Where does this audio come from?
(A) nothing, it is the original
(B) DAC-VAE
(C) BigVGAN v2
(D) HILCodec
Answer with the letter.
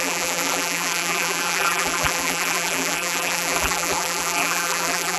C